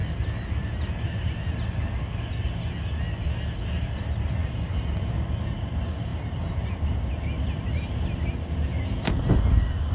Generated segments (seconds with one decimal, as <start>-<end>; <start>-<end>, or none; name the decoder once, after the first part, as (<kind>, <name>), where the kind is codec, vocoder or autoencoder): 4.4-5.1 (vocoder, BigVGAN v2); 6.1-7.1